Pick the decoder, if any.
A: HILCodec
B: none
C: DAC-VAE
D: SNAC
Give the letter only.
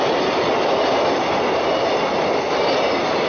B